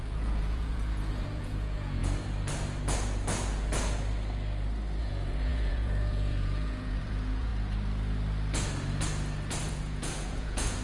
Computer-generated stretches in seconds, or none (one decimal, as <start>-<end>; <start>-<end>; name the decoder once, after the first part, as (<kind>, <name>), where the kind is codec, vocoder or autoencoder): 0.0-2.0 (vocoder, Vocos); 5.0-7.5; 9.7-10.8